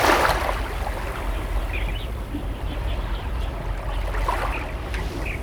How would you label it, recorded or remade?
recorded